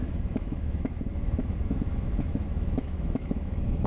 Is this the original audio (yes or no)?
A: no